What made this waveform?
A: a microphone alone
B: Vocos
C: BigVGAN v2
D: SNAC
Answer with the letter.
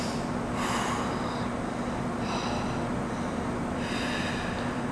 A